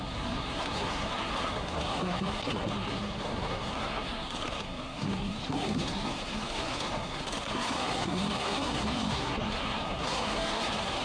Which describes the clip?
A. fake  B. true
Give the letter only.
A